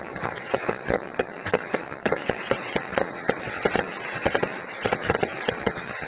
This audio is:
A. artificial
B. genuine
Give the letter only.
A